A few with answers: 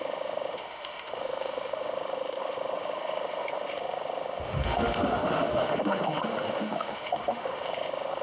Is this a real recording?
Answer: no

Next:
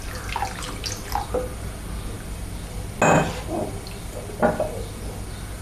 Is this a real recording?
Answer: yes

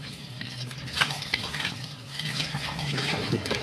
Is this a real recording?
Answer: no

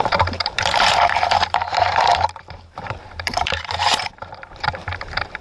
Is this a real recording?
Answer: no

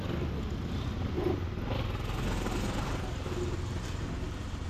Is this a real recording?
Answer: yes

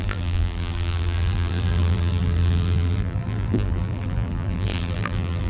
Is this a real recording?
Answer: no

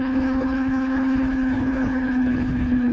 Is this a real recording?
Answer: no